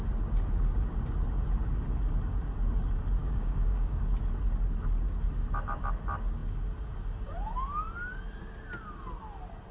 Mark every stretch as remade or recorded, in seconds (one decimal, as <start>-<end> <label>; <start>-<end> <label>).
0.0-3.2 recorded; 3.2-4.0 remade; 4.0-9.7 recorded